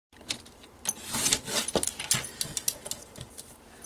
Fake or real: real